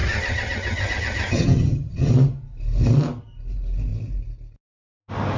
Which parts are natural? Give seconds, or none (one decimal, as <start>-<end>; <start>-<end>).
2.1-5.4